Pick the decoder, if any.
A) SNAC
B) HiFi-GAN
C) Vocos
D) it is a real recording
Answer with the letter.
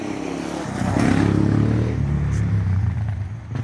D